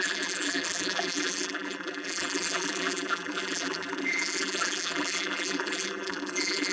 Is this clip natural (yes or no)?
no